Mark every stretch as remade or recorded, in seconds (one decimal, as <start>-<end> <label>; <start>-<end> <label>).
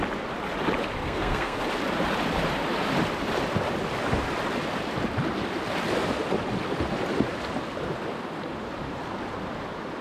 0.0-1.0 recorded; 1.0-1.6 remade; 1.6-10.0 recorded